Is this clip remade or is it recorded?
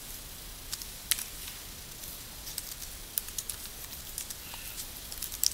recorded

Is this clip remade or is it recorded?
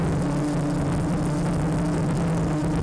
recorded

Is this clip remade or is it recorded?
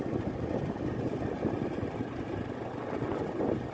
recorded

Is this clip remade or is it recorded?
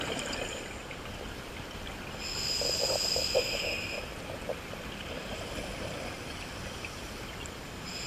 recorded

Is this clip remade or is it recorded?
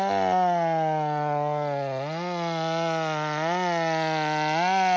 recorded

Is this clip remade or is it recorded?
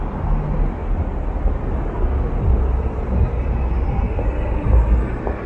recorded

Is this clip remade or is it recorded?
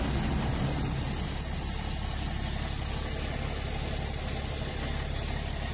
recorded